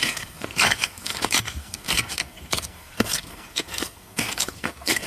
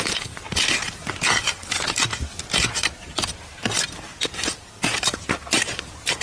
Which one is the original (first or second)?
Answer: second